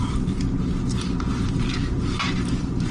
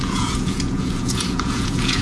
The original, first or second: first